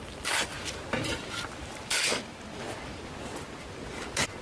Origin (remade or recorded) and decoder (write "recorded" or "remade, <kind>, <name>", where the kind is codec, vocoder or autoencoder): recorded